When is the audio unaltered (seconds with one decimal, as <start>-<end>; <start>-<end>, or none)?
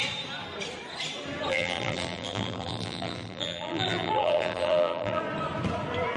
0.0-1.5; 5.2-6.2